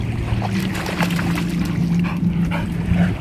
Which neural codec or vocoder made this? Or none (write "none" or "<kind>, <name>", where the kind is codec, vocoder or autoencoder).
none